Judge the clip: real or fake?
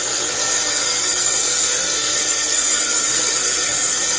fake